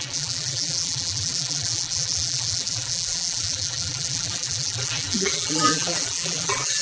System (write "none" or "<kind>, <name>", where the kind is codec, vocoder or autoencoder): vocoder, BigVGAN v2